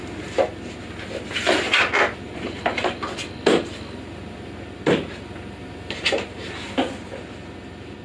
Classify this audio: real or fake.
real